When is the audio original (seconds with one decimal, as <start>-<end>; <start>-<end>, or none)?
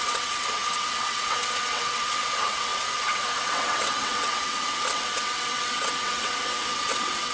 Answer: none